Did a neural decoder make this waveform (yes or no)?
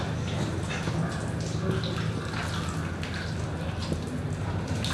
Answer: no